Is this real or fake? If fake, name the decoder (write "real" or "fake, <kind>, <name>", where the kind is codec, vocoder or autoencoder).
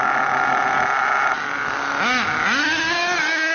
real